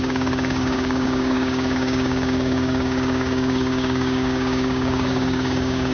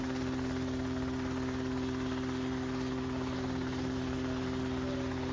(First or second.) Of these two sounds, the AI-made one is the first